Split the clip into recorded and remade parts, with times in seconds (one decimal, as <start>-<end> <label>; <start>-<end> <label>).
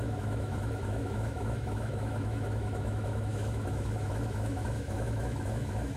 0.0-6.0 remade